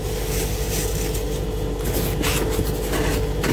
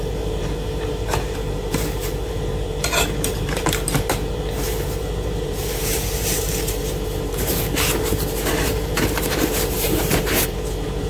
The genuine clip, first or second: first